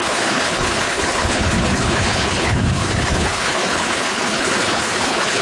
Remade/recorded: remade